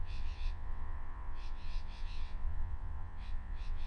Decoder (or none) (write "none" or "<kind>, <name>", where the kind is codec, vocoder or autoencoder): vocoder, WaveNeXt